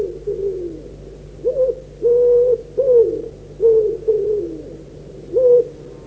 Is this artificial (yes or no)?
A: no